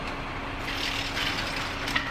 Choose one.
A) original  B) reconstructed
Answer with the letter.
A